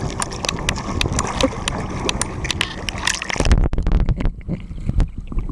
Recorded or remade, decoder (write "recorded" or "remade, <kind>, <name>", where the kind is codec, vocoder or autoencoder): recorded